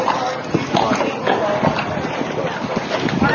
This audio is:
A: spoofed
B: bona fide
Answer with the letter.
B